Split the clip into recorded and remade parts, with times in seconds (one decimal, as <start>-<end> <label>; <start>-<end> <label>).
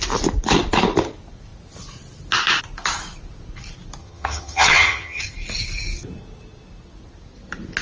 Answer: 0.0-4.0 recorded; 4.0-5.2 remade; 5.2-7.8 recorded